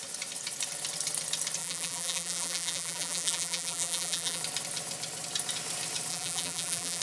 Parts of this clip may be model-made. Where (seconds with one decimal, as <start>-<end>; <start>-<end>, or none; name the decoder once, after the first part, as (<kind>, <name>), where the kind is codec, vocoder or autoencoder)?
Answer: 1.6-4.4 (vocoder, BigVGAN v2); 6.1-7.0